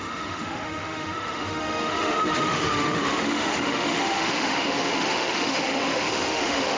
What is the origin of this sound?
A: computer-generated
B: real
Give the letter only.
A